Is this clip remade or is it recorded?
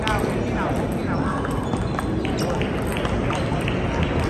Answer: recorded